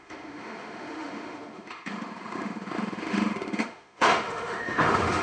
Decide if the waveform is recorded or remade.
remade